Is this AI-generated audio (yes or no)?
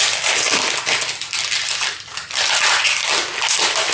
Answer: no